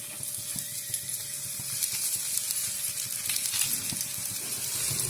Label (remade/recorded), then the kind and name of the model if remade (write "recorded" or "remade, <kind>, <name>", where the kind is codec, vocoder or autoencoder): recorded